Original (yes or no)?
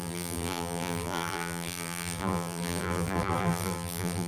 no